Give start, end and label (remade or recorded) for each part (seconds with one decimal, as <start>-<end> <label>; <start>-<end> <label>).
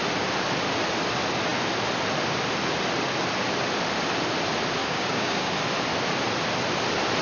0.0-4.8 recorded; 4.8-5.5 remade; 5.5-7.2 recorded